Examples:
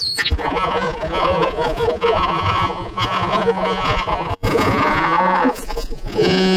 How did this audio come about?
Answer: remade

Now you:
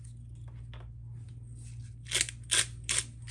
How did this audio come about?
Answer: recorded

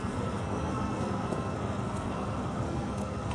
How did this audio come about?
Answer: remade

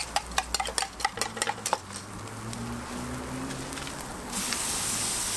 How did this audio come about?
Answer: recorded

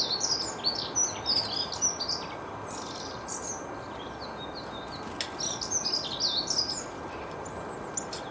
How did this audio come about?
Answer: recorded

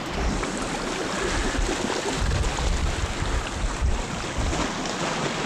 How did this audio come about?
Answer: recorded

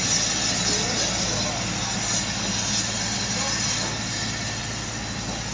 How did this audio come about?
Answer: recorded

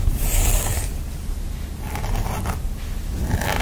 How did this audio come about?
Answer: recorded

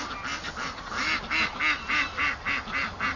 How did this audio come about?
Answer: recorded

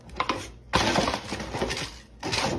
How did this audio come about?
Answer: recorded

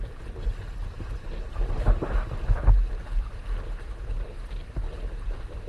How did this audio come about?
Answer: remade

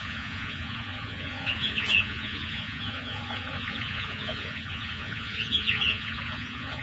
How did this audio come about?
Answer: remade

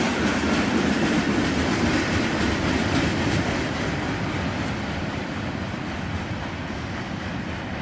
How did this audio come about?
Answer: recorded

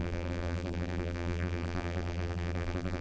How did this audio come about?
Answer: remade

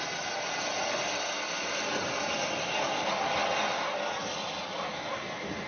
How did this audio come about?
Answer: recorded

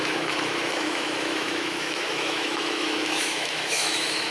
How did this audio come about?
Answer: remade